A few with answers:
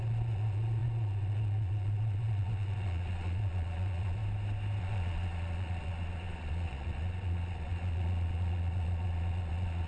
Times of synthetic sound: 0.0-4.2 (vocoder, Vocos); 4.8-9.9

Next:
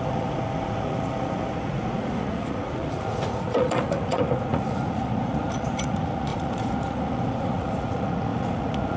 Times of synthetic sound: 0.0-9.0 (vocoder, Vocos)

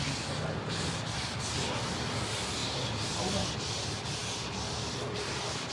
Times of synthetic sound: none

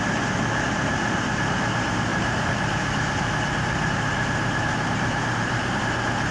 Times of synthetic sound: 2.1-5.8 (vocoder, BigVGAN v2)

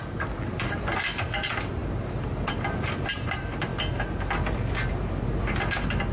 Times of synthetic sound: none

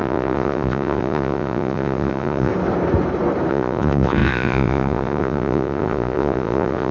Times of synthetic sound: 0.0-2.5 (vocoder, Vocos); 3.5-6.9

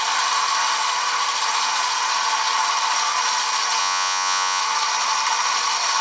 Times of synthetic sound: 3.8-4.6 (vocoder, Vocos)

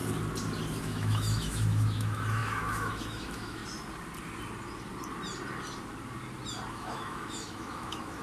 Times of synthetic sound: 0.8-3.6 (autoencoder, DAC-VAE); 6.7-8.2